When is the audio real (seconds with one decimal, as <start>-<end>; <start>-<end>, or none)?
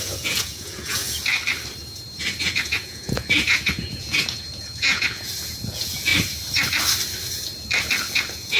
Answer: 1.0-2.4; 6.1-8.1